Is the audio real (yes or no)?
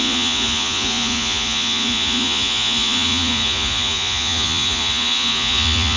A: no